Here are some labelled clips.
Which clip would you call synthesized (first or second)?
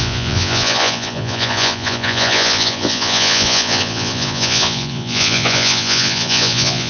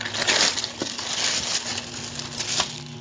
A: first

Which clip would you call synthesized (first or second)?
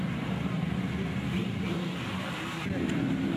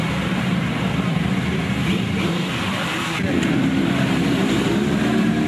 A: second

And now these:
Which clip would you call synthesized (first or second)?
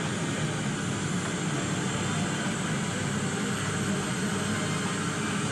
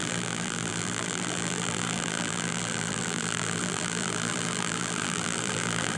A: second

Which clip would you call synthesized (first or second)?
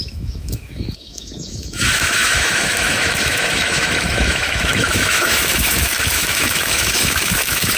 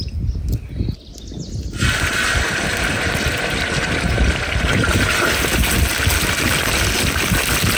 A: first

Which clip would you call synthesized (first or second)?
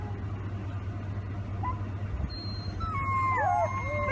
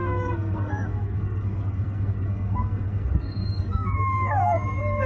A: second